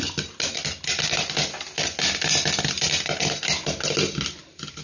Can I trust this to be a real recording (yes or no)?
yes